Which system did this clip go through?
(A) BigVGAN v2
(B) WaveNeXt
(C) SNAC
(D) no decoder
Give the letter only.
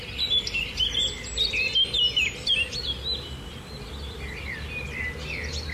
D